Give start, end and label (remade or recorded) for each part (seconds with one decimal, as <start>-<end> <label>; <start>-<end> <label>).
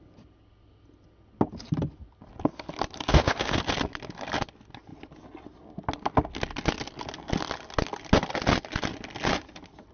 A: 0.0-3.1 recorded; 3.1-3.6 remade; 3.6-9.9 recorded